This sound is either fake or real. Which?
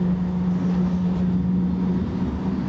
real